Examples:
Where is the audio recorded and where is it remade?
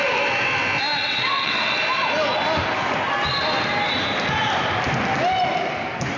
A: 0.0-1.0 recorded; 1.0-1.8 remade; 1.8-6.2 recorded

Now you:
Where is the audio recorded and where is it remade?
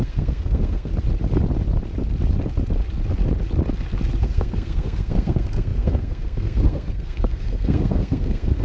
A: 0.0-0.9 remade; 0.9-4.2 recorded; 4.2-8.6 remade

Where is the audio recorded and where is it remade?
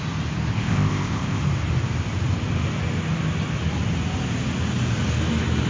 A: 0.0-0.5 recorded; 0.5-1.4 remade; 1.4-5.7 recorded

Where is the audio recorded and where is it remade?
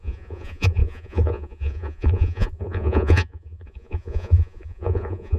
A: 0.0-5.4 remade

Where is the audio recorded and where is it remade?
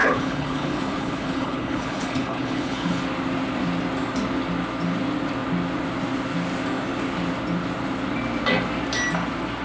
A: 0.0-3.0 remade; 3.0-9.6 recorded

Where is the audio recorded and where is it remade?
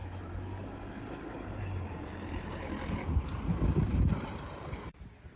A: 0.0-3.2 remade; 3.2-3.9 recorded; 3.9-4.7 remade; 4.7-5.4 recorded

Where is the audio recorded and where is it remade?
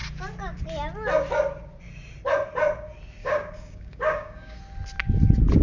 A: 0.0-3.2 recorded; 3.2-4.6 remade; 4.6-5.6 recorded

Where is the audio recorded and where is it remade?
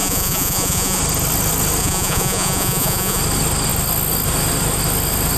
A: 0.0-1.0 remade; 1.0-1.8 recorded; 1.8-3.2 remade; 3.2-5.4 recorded